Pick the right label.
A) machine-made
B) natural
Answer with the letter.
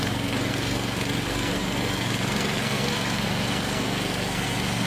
A